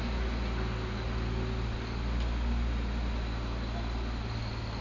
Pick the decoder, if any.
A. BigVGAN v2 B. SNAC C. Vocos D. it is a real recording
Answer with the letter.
D